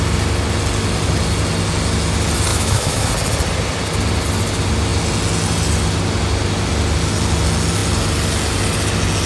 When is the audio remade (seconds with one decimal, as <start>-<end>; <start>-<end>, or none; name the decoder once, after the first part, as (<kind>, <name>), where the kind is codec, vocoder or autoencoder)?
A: 2.5-3.1 (autoencoder, DAC-VAE)